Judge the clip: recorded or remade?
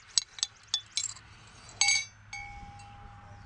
recorded